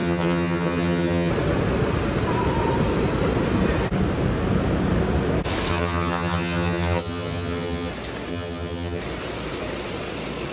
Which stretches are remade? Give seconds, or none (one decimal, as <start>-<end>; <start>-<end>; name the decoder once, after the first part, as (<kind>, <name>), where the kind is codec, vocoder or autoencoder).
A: 0.0-1.3 (vocoder, HiFi-GAN); 5.7-7.9; 8.3-9.0